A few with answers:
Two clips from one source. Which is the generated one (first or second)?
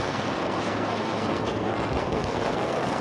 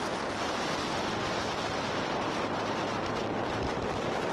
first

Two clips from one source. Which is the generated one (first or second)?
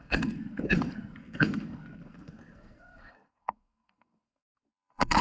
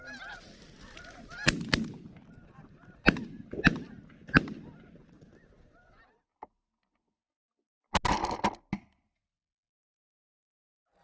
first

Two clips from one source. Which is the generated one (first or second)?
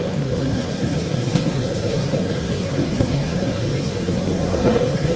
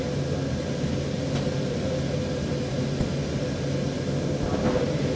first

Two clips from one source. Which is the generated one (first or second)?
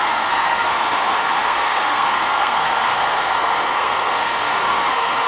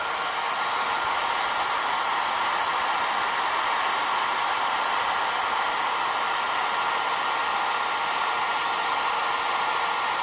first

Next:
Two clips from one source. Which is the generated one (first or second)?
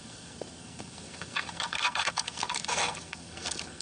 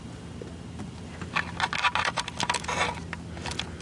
first